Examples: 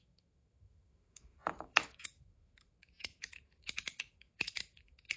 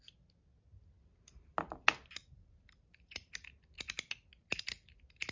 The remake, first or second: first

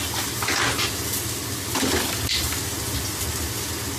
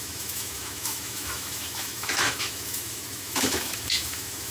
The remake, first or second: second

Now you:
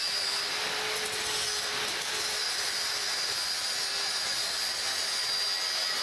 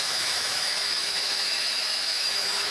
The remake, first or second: second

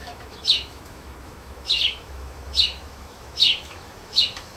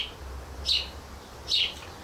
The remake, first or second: first